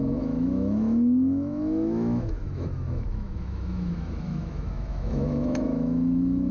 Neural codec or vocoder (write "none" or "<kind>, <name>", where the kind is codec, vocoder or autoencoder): autoencoder, DAC-VAE